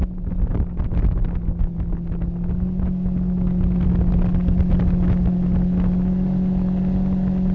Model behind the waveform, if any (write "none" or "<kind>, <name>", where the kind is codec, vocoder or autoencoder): none